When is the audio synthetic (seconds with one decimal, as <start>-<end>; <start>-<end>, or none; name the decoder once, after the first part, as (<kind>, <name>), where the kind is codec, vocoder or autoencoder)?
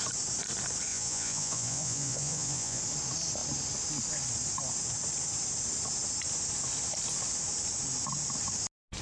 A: 0.9-2.8 (vocoder, Vocos)